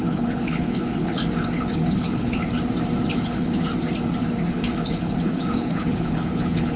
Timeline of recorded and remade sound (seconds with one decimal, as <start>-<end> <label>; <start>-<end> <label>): 0.0-1.2 remade; 1.2-1.7 recorded; 1.7-2.4 remade; 2.4-3.1 recorded; 3.1-3.7 remade; 3.7-4.5 recorded; 4.5-6.8 remade